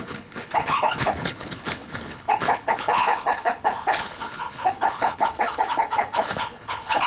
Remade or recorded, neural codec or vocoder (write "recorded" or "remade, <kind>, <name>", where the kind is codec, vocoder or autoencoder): remade, codec, HILCodec